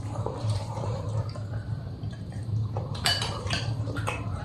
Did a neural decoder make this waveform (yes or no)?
yes